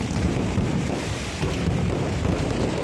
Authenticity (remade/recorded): remade